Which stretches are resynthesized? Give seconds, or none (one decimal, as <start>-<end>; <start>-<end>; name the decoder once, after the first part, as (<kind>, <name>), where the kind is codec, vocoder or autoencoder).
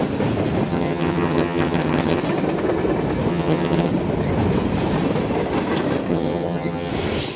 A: 0.7-2.2 (vocoder, HiFi-GAN); 3.3-3.9; 6.1-6.9